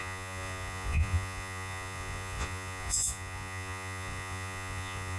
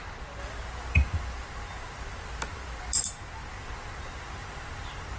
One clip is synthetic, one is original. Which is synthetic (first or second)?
first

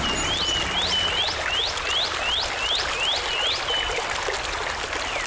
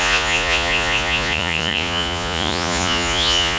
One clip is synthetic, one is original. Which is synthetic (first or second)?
second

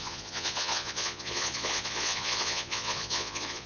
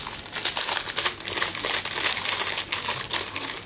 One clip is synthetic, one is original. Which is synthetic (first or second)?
first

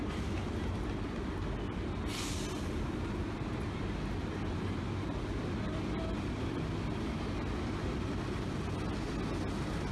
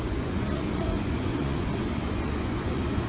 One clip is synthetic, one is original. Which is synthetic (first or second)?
second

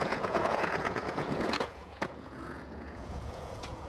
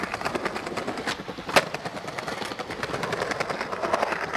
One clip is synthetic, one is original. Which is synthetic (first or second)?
first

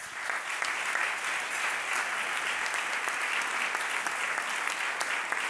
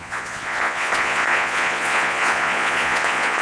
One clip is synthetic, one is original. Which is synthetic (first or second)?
second